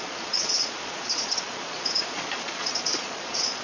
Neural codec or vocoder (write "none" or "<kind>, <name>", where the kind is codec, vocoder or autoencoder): vocoder, Vocos